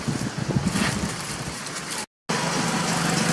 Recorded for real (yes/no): yes